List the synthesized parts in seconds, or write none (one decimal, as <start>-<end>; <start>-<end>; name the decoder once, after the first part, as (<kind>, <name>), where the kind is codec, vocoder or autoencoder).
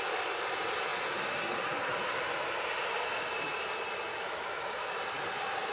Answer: 4.1-4.9 (autoencoder, DAC-VAE)